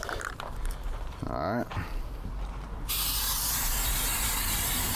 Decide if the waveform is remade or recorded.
remade